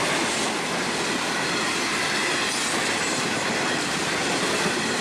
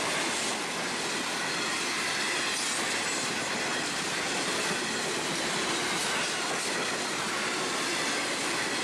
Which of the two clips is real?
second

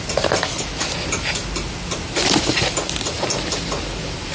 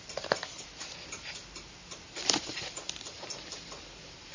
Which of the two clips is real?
first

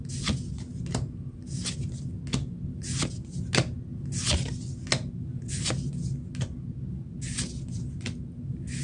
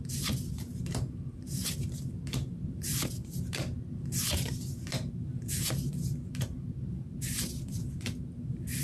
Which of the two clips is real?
first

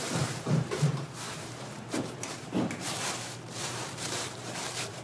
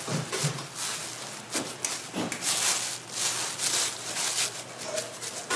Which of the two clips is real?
second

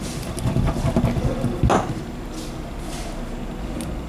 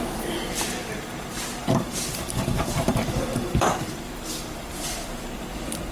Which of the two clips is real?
first